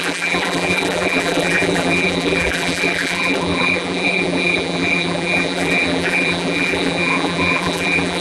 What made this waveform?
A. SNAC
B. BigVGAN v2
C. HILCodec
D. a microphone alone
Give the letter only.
B